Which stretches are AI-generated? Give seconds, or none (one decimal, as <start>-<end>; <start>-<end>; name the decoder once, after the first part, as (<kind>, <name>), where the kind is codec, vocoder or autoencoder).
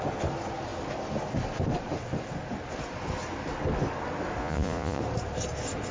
4.4-5.0 (vocoder, Vocos)